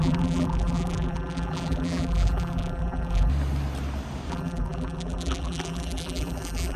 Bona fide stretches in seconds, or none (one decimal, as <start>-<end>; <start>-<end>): 3.3-4.3